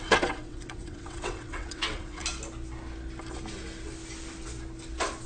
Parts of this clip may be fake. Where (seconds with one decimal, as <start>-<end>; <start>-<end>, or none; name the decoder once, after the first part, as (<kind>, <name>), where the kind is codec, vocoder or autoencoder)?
0.0-2.2 (vocoder, WaveNeXt)